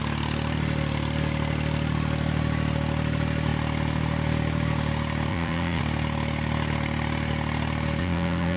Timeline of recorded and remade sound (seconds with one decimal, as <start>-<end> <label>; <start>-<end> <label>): 0.0-5.3 recorded; 5.3-5.8 remade; 5.8-8.0 recorded; 8.0-8.6 remade